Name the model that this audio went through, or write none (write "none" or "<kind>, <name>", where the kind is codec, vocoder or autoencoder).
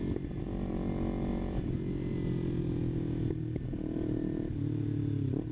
none